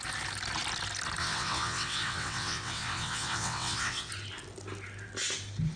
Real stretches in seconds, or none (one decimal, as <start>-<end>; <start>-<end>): 0.0-1.2; 4.1-5.8